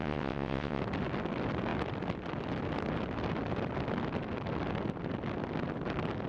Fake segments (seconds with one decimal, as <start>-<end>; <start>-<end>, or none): 0.0-0.8